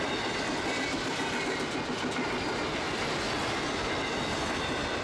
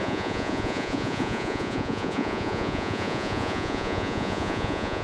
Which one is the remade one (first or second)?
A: second